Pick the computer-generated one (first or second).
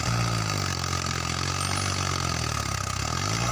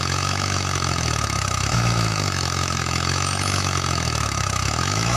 second